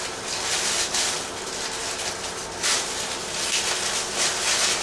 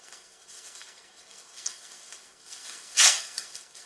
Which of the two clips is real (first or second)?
first